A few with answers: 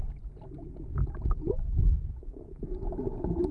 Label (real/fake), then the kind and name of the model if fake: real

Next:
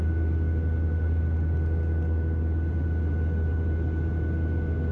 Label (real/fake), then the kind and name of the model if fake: real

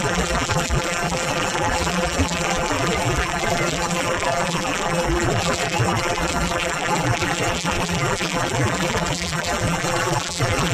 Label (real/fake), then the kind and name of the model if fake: fake, vocoder, BigVGAN v2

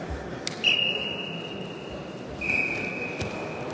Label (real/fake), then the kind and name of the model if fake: real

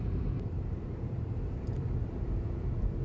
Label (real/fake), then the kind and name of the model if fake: fake, vocoder, BigVGAN v2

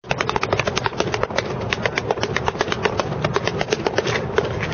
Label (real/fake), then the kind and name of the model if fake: real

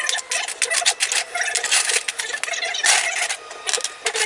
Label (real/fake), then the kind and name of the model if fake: real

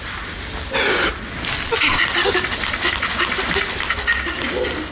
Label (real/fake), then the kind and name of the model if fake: real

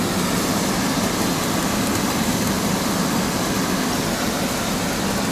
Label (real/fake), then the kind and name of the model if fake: real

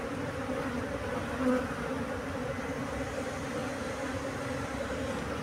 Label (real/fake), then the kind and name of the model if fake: real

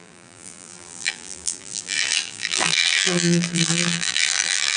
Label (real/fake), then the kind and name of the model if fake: fake, vocoder, BigVGAN v2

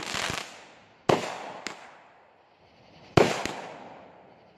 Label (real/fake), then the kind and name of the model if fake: real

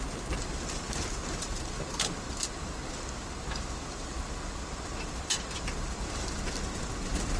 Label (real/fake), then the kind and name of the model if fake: fake, vocoder, BigVGAN v2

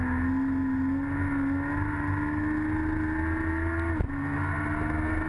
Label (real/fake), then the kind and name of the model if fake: real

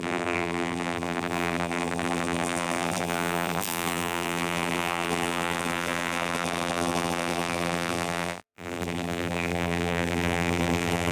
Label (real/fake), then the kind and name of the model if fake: fake, vocoder, BigVGAN v2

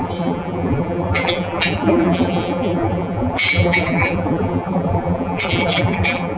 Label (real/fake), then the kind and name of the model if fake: fake, vocoder, BigVGAN v2